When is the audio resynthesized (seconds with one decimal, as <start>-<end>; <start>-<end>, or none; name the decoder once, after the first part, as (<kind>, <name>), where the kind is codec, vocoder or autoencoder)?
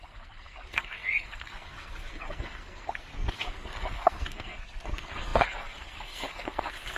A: 0.0-7.0 (codec, SNAC)